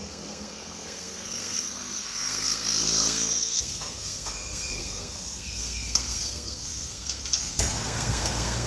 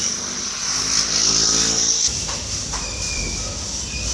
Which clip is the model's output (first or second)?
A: first